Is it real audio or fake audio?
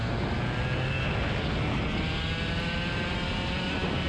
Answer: real